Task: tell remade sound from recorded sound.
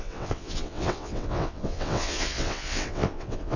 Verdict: remade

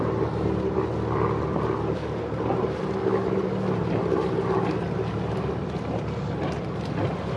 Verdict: recorded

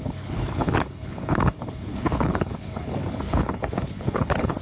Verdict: remade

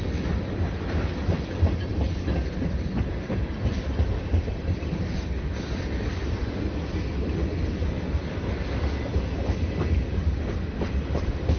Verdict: recorded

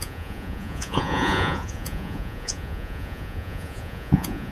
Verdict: remade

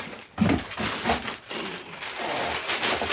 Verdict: recorded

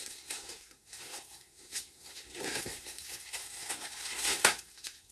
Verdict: remade